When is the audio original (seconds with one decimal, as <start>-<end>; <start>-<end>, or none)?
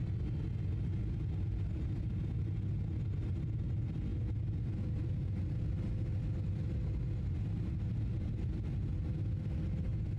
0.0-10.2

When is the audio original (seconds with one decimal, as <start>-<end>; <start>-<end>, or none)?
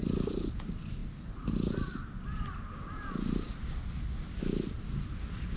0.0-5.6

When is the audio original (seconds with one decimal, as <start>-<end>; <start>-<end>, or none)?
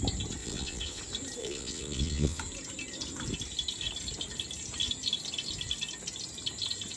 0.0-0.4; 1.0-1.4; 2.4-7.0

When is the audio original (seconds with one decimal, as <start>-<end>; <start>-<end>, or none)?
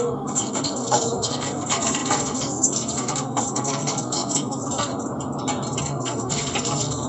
4.9-5.8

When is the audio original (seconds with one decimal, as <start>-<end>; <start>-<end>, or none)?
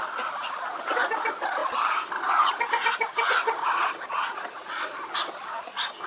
0.0-6.1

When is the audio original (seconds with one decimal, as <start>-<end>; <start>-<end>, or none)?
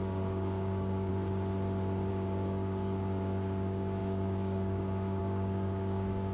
1.1-2.1